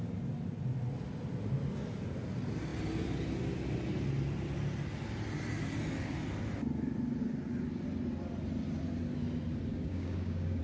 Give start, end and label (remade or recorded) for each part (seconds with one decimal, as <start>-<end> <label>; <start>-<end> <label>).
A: 0.0-9.7 recorded; 9.7-10.6 remade